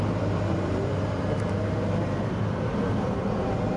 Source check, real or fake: fake